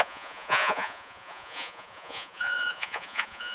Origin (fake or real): fake